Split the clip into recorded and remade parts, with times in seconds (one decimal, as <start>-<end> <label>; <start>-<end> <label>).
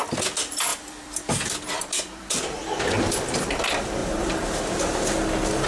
0.0-0.7 recorded; 0.7-2.6 remade; 2.6-4.0 recorded; 4.0-4.6 remade; 4.6-5.7 recorded